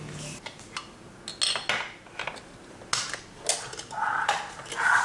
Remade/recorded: recorded